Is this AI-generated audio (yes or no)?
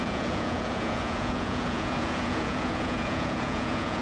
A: yes